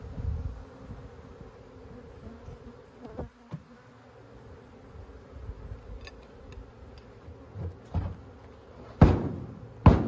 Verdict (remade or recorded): recorded